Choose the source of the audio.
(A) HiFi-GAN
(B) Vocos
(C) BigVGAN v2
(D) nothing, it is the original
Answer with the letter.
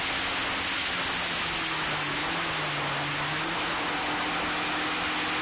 D